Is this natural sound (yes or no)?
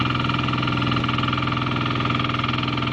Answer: yes